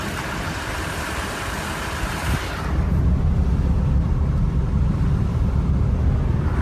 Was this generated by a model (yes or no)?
no